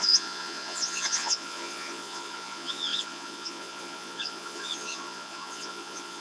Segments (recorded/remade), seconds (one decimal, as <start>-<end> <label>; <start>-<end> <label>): 0.0-6.2 remade